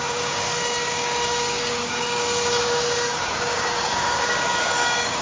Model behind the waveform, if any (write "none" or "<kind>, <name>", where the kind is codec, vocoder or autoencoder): codec, DAC